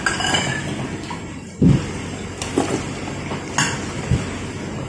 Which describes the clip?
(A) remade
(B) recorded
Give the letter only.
B